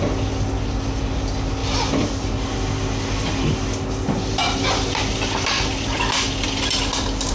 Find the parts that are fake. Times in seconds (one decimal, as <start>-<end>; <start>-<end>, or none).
none

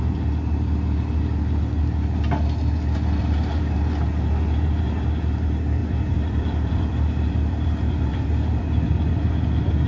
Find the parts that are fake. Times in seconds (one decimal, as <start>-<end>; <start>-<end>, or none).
3.2-3.7; 5.8-9.4

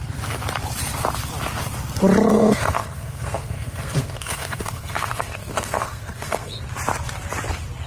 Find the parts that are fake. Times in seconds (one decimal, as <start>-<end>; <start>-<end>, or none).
2.3-6.6

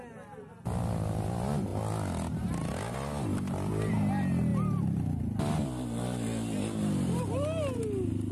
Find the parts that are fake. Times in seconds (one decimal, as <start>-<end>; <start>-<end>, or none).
none